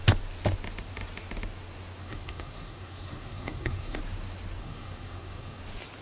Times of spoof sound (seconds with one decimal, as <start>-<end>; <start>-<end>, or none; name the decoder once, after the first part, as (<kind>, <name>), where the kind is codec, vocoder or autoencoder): 2.0-4.0 (codec, SNAC); 4.6-5.6